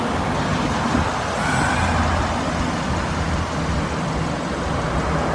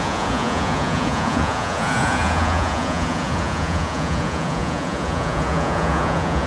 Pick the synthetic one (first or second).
second